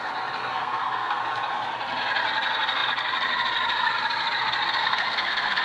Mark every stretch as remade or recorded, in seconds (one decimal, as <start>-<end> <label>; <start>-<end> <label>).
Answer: 0.0-0.4 recorded; 0.4-1.2 remade; 1.2-4.8 recorded; 4.8-5.6 remade